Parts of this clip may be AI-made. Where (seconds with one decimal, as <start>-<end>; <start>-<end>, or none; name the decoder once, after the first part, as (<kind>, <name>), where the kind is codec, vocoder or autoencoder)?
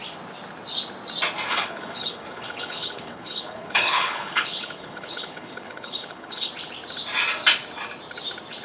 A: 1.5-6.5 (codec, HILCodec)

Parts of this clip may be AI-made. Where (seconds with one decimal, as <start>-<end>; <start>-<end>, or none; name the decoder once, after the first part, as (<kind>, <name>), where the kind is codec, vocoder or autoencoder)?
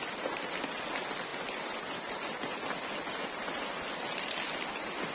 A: none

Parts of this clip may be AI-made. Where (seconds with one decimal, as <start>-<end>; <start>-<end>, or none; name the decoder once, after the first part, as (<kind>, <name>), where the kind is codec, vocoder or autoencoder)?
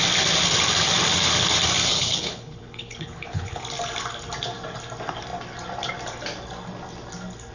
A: 1.9-3.6 (codec, HILCodec)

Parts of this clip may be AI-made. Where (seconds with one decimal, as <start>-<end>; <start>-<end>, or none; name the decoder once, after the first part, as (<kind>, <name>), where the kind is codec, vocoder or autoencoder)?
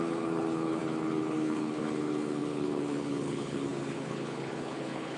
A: 0.0-5.2 (codec, HILCodec)